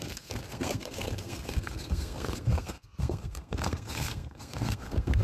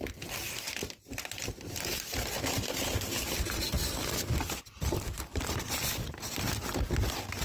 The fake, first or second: first